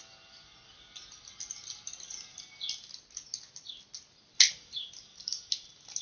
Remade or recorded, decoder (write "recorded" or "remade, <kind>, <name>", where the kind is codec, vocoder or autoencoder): recorded